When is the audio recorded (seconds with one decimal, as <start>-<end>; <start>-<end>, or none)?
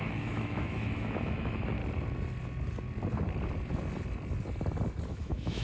1.8-5.1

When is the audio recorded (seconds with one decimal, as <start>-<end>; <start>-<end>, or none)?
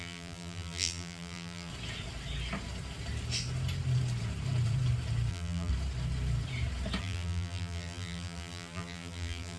1.7-5.3; 5.7-7.0